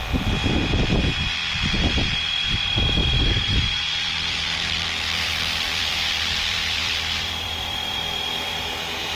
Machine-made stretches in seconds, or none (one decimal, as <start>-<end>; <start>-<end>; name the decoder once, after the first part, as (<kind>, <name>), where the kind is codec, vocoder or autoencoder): 0.0-9.2 (vocoder, BigVGAN v2)